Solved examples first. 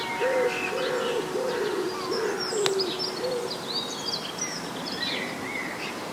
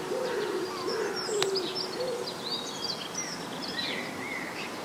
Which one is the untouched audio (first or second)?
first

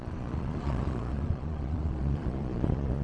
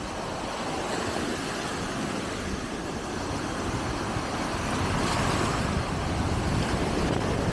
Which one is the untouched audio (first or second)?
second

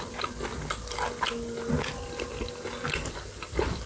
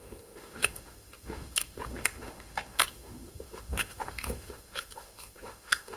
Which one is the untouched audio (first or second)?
first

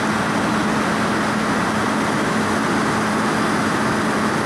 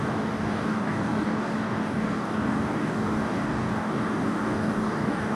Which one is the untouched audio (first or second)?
first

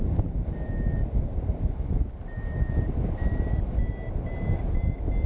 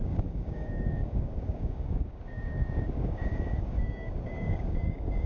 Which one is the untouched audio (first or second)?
first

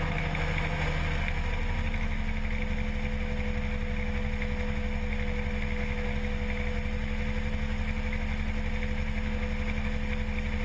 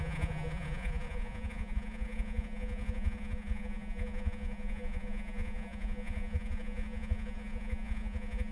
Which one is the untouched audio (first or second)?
first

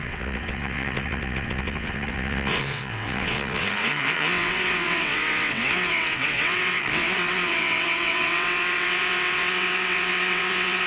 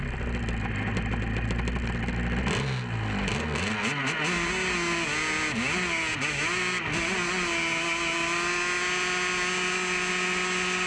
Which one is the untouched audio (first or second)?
second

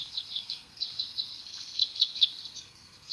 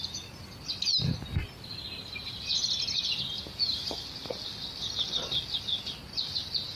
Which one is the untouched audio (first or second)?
second